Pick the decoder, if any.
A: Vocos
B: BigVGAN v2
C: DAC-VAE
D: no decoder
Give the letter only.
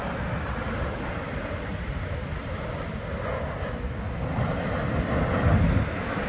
D